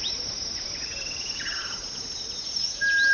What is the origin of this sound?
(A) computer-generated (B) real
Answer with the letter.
A